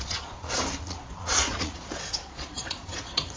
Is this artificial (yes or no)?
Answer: yes